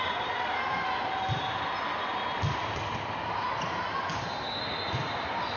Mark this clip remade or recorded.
recorded